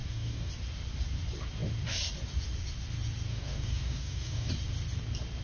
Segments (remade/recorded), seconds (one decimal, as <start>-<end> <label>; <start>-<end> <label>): 0.0-0.5 remade; 0.5-3.3 recorded; 3.3-4.5 remade; 4.5-5.4 recorded